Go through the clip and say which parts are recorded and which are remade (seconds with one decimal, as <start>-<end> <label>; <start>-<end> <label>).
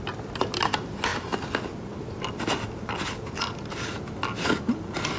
0.0-5.2 recorded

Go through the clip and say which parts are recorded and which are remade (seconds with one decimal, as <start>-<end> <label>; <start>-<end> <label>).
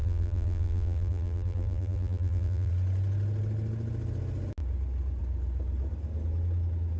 0.0-2.7 remade; 2.7-7.0 recorded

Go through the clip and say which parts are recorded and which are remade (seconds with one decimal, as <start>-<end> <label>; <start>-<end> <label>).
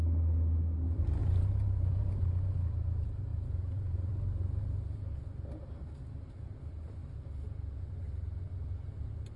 0.0-1.2 recorded; 1.2-2.2 remade; 2.2-3.3 recorded; 3.3-4.1 remade; 4.1-9.4 recorded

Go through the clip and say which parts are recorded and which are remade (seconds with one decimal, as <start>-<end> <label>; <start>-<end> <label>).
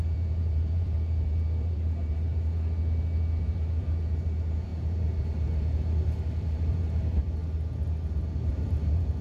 0.0-2.3 remade; 2.3-3.4 recorded; 3.4-7.4 remade; 7.4-8.5 recorded; 8.5-9.2 remade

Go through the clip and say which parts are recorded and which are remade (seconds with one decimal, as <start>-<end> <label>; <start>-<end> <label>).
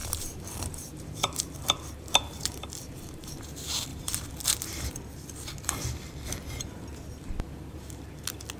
0.0-3.4 remade; 3.4-3.9 recorded; 3.9-4.9 remade; 4.9-8.6 recorded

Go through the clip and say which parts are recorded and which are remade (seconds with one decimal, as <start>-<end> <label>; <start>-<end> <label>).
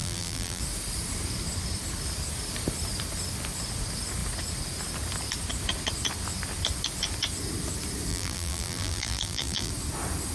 0.0-0.6 remade; 0.6-8.1 recorded; 8.1-9.7 remade; 9.7-10.3 recorded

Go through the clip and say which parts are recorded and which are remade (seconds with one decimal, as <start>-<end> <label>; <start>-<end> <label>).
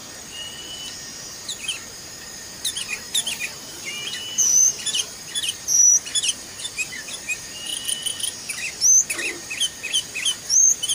0.0-1.3 recorded; 1.3-6.1 remade; 6.1-6.7 recorded; 6.7-7.7 remade; 7.7-9.4 recorded; 9.4-10.9 remade